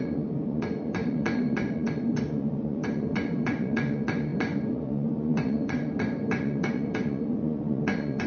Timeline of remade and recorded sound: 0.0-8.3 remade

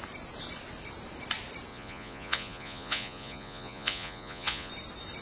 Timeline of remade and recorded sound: 0.0-1.7 recorded; 1.7-4.7 remade; 4.7-5.2 recorded

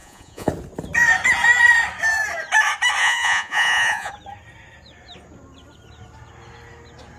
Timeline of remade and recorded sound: 0.0-0.5 remade; 0.5-3.0 recorded; 3.0-4.1 remade; 4.1-7.2 recorded

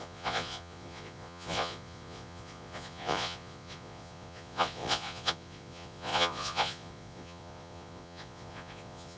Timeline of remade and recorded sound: 0.0-9.2 remade

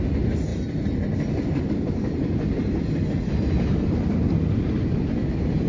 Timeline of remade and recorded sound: 0.0-5.7 recorded